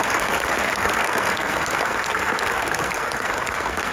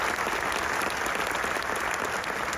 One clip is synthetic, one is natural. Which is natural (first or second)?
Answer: second